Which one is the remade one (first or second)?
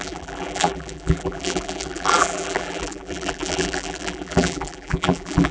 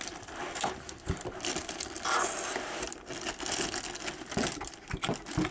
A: first